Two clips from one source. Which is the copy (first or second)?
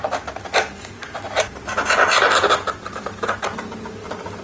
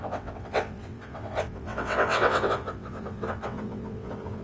second